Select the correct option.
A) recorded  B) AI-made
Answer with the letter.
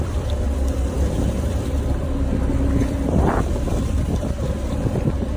B